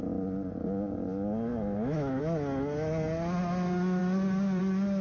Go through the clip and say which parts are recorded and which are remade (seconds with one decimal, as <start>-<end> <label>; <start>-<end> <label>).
0.0-1.5 recorded; 1.5-2.2 remade; 2.2-5.0 recorded